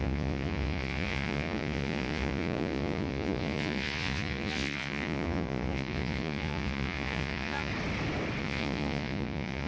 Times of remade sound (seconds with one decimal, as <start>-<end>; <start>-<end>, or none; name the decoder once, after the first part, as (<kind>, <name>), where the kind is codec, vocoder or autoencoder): 0.0-7.7 (vocoder, Vocos); 8.4-9.7